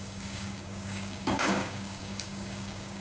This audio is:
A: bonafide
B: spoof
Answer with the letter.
B